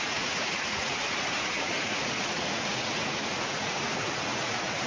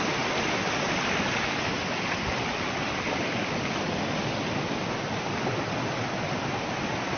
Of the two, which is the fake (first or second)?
first